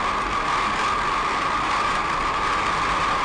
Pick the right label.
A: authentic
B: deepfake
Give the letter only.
A